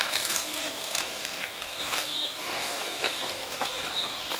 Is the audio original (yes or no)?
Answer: no